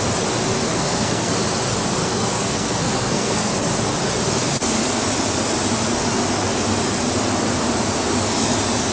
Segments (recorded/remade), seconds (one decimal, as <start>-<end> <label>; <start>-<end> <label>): 0.0-0.7 recorded; 0.7-1.3 remade; 1.3-2.0 recorded; 2.0-3.5 remade; 3.5-8.9 recorded